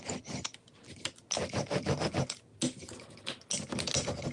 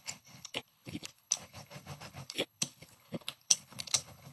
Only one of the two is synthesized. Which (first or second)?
second